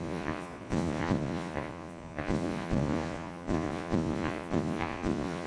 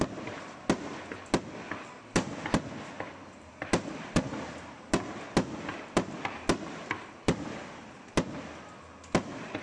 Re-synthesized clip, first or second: first